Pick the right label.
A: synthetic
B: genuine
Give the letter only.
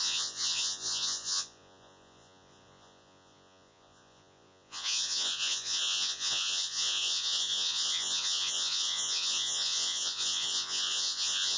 A